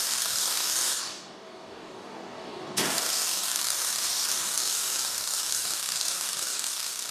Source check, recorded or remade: remade